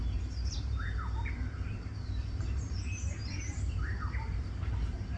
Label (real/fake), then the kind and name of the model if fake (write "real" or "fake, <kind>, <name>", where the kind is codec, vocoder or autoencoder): fake, vocoder, BigVGAN v2